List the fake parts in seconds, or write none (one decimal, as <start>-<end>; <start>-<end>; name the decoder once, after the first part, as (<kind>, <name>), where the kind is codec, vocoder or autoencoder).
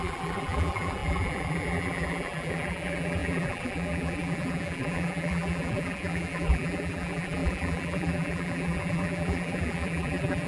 0.0-10.5 (vocoder, BigVGAN v2)